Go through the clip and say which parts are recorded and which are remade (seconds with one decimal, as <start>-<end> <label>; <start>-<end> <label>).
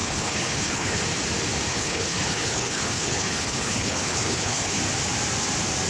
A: 0.0-1.0 remade; 1.0-1.7 recorded; 1.7-4.8 remade; 4.8-5.9 recorded